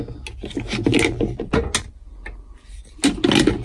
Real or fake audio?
real